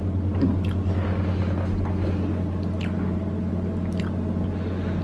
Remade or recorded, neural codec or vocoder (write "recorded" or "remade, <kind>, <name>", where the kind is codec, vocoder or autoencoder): recorded